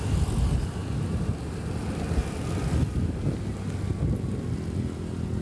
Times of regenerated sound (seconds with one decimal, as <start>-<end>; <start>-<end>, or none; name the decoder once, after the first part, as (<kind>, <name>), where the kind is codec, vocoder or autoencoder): none